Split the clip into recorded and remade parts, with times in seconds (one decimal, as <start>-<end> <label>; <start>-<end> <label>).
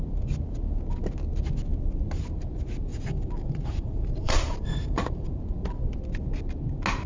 0.0-2.9 recorded; 2.9-5.3 remade; 5.3-7.1 recorded